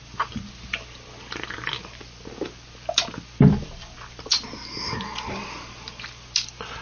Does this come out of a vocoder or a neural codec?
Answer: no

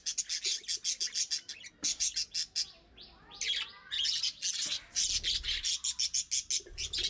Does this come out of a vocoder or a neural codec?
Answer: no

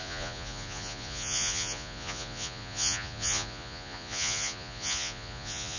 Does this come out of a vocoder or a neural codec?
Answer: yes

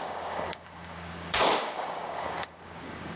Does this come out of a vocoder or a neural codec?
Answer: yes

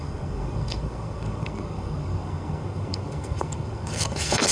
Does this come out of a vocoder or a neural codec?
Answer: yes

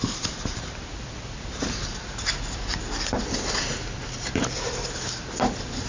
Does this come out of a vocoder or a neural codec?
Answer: no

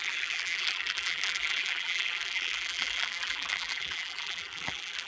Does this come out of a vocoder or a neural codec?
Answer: yes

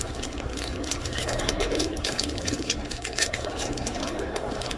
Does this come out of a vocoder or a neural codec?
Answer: yes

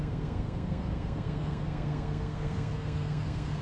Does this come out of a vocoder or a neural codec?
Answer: yes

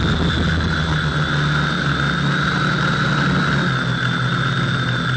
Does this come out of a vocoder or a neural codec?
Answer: no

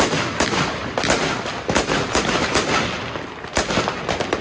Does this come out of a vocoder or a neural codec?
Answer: no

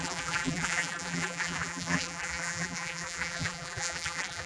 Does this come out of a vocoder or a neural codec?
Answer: yes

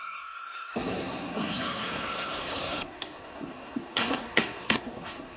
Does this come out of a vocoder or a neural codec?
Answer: yes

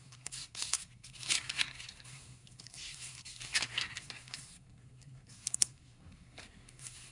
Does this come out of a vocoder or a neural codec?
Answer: yes